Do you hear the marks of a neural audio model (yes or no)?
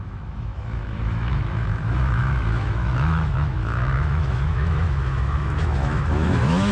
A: yes